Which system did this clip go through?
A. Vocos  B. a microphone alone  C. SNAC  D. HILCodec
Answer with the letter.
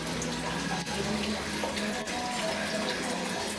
B